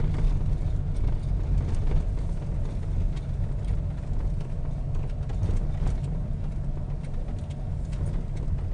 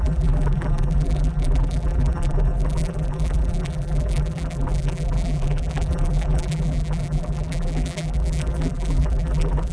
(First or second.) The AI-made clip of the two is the second